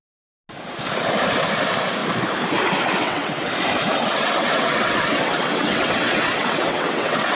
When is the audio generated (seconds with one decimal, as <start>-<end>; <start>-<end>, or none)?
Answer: 3.0-3.5; 3.9-7.3